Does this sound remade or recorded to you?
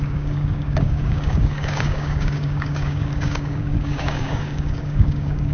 remade